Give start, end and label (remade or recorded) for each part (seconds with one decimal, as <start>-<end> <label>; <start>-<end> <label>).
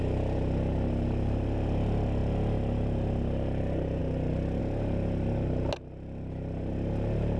0.0-7.4 recorded